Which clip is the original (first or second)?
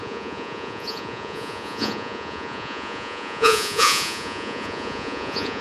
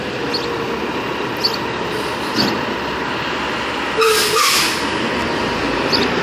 second